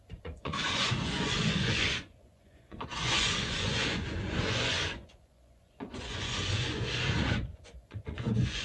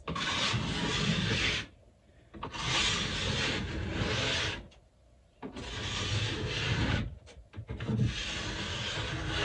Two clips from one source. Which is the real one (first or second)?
second